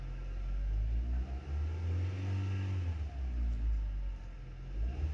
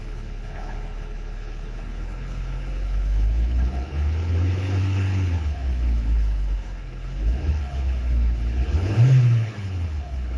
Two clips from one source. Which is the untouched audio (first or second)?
first